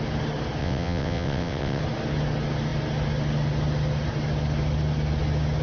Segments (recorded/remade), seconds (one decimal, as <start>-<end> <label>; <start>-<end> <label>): 0.0-0.6 recorded; 0.6-1.8 remade; 1.8-5.6 recorded